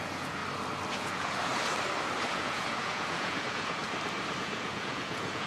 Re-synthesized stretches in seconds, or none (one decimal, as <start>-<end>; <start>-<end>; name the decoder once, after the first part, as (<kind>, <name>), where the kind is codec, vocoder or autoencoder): 0.0-0.4 (vocoder, Vocos); 0.9-1.5; 2.2-3.8; 4.4-5.5